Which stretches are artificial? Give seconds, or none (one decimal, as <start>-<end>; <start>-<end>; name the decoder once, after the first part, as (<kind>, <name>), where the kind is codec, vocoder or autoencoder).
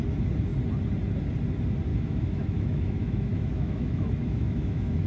1.9-5.1 (autoencoder, DAC-VAE)